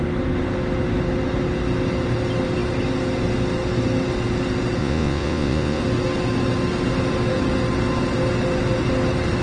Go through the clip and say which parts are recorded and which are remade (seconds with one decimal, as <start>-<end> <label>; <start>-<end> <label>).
0.0-4.8 recorded; 4.8-5.8 remade; 5.8-9.4 recorded